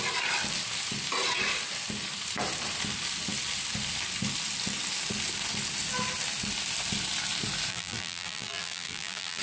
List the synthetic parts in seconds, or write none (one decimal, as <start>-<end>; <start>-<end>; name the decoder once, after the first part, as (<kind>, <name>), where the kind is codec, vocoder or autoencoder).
7.7-9.4 (vocoder, BigVGAN v2)